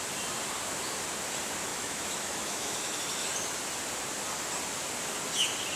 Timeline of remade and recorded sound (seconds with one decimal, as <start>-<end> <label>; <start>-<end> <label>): 0.0-1.7 recorded; 1.7-3.0 remade; 3.0-5.8 recorded